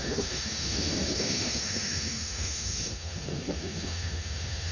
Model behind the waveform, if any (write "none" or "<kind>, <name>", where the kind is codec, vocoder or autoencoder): autoencoder, DAC-VAE